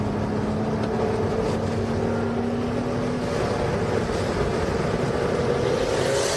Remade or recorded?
recorded